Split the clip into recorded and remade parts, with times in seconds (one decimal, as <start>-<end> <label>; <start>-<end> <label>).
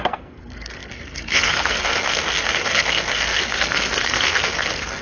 0.0-5.0 remade